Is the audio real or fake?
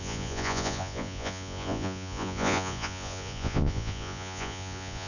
fake